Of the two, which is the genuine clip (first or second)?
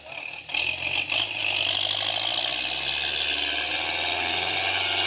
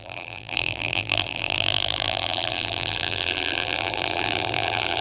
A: first